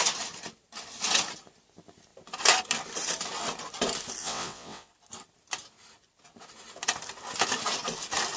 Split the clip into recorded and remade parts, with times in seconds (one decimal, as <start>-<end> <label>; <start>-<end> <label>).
0.0-4.2 recorded; 4.2-4.9 remade; 4.9-8.4 recorded